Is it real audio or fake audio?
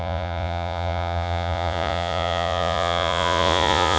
fake